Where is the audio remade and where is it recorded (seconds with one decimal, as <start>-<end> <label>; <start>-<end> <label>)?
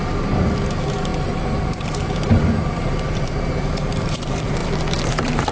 0.0-4.6 remade; 4.6-5.1 recorded; 5.1-5.5 remade